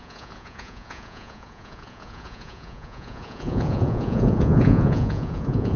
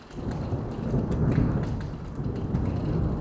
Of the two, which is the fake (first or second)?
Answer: first